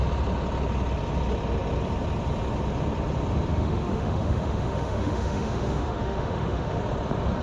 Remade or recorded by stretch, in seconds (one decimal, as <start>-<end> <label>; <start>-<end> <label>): 0.0-3.5 recorded; 3.5-6.8 remade; 6.8-7.4 recorded